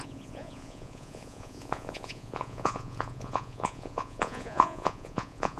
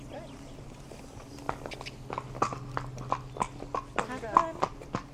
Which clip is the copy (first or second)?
first